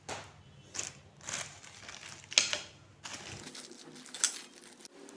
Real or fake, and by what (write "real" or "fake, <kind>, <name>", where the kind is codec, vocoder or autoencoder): real